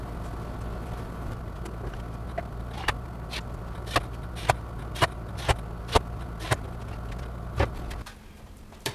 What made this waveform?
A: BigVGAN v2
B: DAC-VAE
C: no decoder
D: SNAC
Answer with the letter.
C